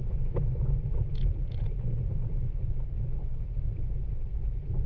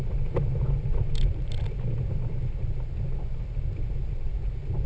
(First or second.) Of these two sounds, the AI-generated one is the first